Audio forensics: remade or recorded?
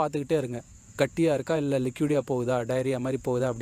remade